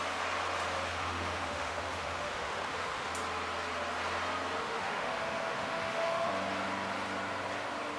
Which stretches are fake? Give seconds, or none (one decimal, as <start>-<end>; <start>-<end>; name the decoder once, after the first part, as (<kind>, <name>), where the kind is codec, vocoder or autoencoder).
0.9-3.1 (autoencoder, DAC-VAE); 4.6-6.3